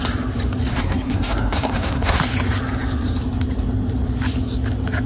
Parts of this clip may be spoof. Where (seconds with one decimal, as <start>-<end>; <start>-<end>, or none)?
0.7-2.2